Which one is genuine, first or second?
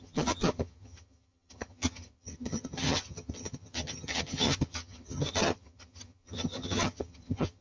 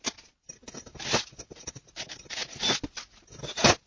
second